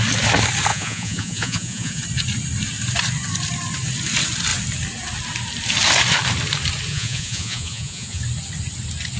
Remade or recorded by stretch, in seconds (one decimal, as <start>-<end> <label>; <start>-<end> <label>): 0.0-0.7 recorded; 0.7-2.0 remade; 2.0-6.9 recorded; 6.9-8.2 remade; 8.2-9.2 recorded